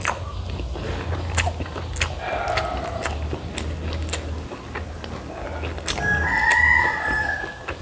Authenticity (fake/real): real